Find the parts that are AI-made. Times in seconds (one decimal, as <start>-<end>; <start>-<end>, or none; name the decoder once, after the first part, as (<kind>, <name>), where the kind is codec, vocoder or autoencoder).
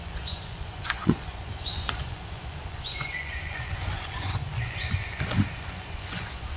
0.0-6.6 (vocoder, Vocos)